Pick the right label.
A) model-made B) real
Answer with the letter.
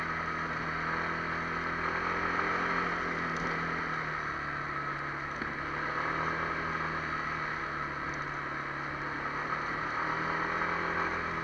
B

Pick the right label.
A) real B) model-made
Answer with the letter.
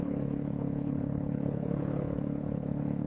B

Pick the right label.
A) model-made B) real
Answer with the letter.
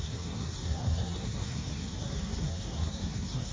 A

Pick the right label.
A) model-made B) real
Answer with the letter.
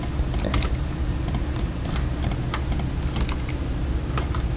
B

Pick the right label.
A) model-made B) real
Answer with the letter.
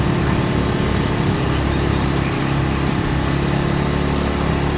B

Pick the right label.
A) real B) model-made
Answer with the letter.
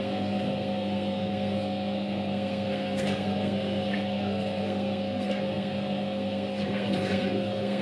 B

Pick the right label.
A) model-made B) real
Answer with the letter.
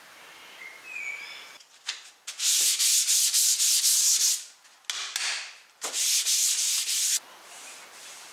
B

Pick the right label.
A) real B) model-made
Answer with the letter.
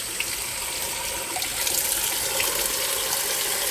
A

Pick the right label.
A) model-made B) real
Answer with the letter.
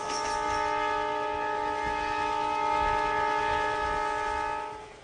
B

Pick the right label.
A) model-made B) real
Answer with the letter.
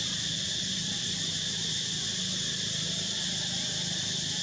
B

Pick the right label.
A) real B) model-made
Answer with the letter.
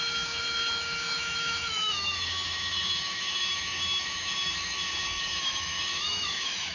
B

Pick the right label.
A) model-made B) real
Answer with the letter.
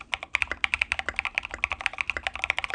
B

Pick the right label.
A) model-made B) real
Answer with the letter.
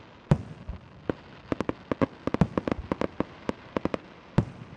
B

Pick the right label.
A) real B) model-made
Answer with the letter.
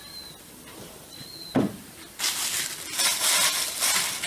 A